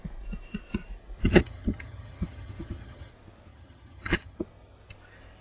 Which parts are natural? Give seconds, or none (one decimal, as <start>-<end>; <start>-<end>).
0.0-1.2; 3.1-3.5; 4.4-5.4